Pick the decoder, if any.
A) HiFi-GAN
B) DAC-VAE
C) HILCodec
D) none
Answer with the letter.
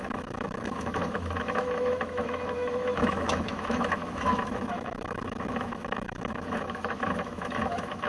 B